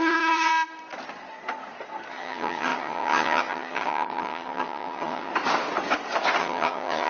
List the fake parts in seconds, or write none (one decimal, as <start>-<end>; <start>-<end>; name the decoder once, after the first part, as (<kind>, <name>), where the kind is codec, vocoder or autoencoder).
0.0-0.5 (vocoder, HiFi-GAN); 2.1-5.3; 6.4-7.1